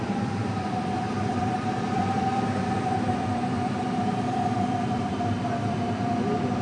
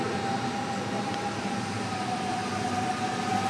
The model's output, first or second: first